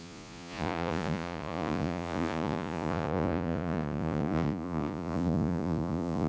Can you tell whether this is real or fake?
fake